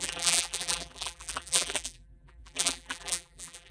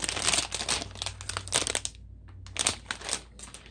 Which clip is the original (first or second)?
second